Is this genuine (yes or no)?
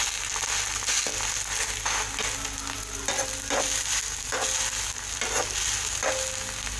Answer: yes